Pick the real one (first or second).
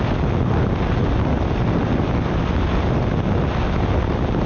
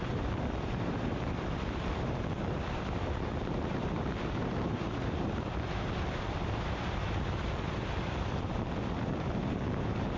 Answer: first